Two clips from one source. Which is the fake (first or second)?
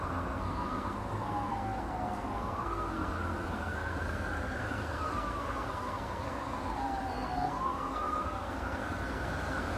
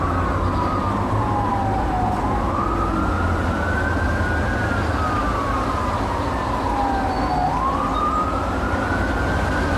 first